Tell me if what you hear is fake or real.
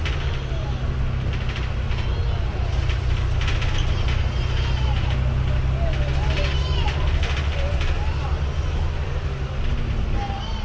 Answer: real